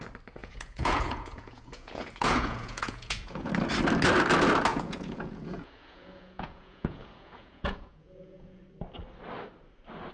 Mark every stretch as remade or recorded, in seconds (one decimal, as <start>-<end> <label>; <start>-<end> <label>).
0.0-0.4 recorded; 0.4-3.5 remade; 3.5-4.7 recorded; 4.7-8.6 remade; 8.6-10.1 recorded